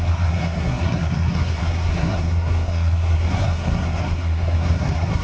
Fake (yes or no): yes